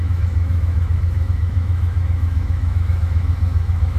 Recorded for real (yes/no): no